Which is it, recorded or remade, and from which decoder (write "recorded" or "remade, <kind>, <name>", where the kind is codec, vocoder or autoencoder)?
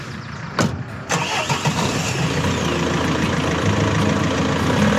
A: recorded